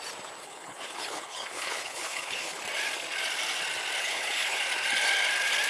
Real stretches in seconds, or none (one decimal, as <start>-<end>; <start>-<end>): 0.0-0.4; 2.6-4.0; 4.6-5.7